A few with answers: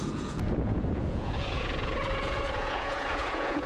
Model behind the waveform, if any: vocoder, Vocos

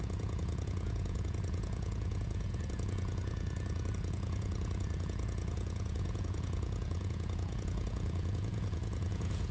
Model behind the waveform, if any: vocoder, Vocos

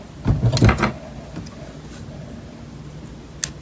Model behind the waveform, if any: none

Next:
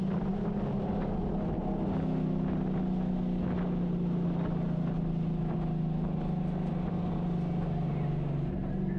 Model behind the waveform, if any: none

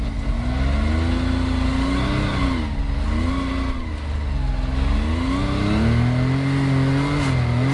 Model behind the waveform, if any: none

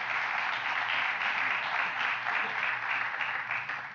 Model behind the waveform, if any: none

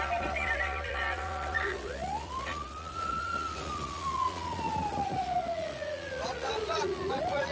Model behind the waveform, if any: vocoder, Vocos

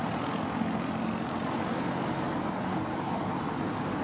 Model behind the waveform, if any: none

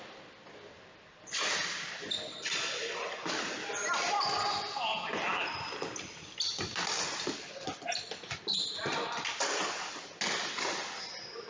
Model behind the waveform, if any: none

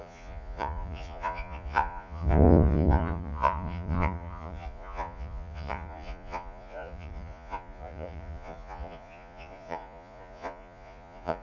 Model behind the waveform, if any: vocoder, Vocos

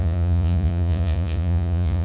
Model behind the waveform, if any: vocoder, Vocos